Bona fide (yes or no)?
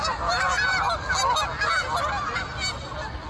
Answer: yes